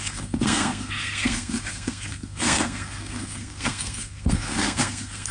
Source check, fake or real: fake